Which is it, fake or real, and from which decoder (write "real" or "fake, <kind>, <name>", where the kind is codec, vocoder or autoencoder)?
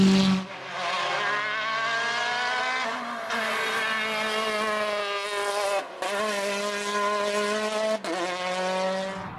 real